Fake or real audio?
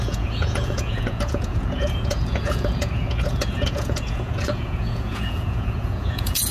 fake